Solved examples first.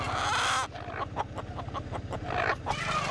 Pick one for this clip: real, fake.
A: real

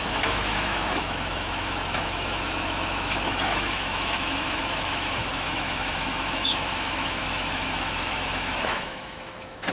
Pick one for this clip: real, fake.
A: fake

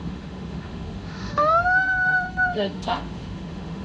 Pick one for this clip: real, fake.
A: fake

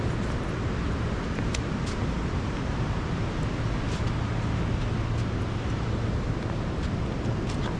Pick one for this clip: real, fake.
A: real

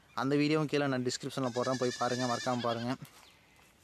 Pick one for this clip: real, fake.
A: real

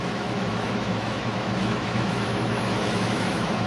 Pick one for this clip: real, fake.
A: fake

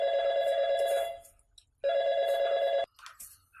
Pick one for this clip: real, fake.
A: real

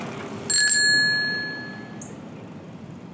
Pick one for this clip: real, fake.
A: real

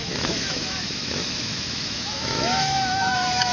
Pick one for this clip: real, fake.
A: fake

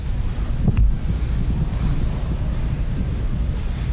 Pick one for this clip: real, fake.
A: real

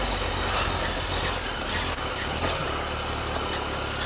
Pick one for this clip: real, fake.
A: real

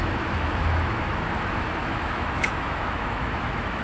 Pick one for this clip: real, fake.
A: fake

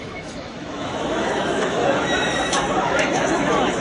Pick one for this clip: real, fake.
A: fake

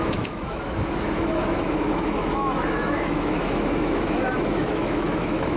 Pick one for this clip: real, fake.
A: fake